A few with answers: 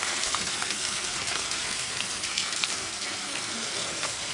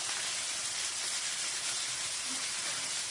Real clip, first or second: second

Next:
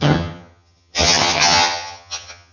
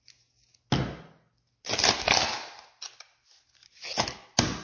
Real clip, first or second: second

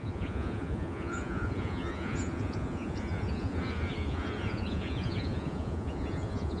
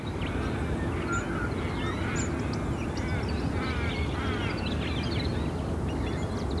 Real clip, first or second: second